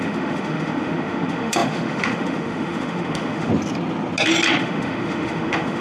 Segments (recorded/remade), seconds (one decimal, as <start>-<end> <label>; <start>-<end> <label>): 0.0-3.5 remade; 3.5-4.6 recorded; 4.6-5.8 remade